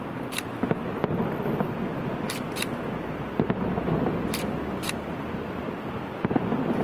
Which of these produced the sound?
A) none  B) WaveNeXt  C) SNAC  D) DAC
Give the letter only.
A